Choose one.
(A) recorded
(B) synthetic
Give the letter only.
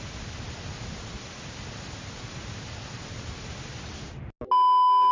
A